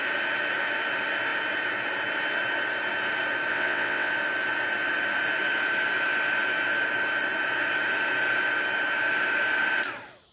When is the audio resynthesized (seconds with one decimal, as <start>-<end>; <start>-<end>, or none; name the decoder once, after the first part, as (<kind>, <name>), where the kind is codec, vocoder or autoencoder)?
3.5-4.1 (vocoder, WaveNeXt)